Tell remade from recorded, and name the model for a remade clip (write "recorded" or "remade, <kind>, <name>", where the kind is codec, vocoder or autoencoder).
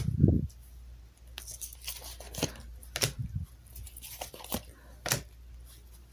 recorded